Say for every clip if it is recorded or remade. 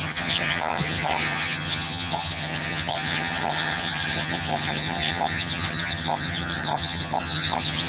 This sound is remade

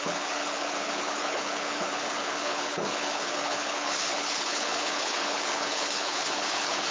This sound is remade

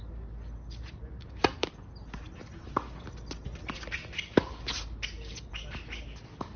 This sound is recorded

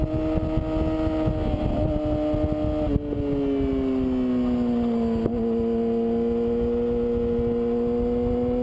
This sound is recorded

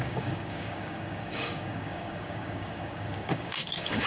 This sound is remade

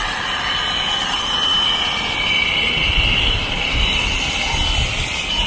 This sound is remade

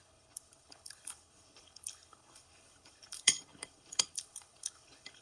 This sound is remade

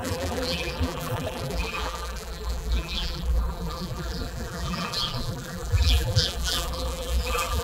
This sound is remade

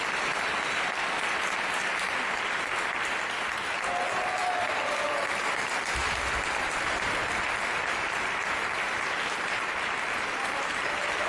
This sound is recorded